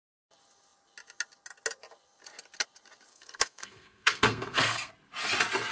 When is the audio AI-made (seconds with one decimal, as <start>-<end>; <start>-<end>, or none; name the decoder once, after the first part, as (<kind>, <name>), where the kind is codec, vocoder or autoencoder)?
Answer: 3.1-4.9 (codec, SNAC)